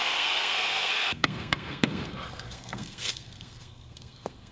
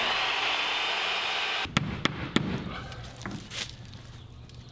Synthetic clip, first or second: first